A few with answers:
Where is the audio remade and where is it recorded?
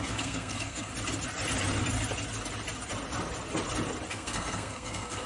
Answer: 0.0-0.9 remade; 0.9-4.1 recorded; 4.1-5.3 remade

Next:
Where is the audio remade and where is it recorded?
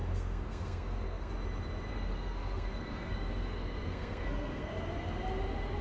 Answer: 0.0-1.3 remade; 1.3-1.9 recorded; 1.9-4.7 remade; 4.7-5.8 recorded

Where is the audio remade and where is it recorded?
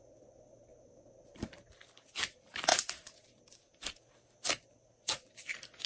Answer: 0.0-5.9 recorded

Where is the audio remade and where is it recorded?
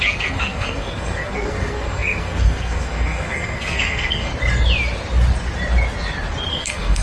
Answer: 0.0-4.3 remade; 4.3-6.5 recorded; 6.5-7.0 remade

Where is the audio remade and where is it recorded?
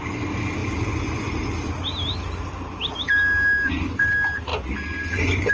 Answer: 0.0-5.5 recorded